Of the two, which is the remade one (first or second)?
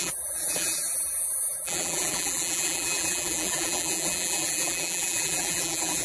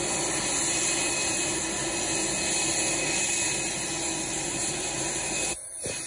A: first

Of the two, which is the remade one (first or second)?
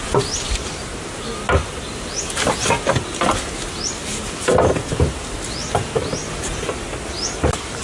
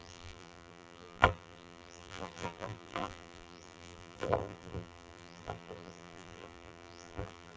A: second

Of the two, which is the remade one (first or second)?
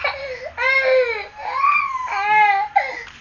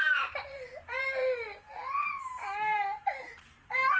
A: second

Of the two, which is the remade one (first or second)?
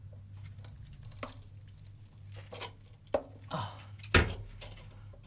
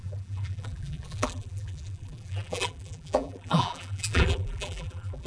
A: second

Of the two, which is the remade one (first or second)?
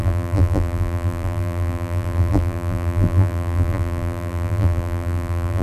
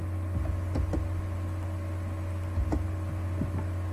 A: first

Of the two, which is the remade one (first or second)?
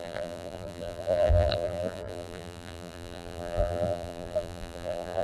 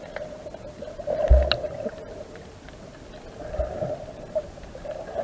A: first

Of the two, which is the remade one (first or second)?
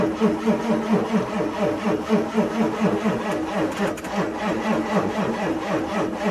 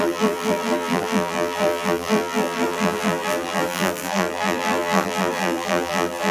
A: second